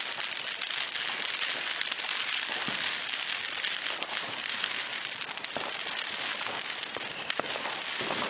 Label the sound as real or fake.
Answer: real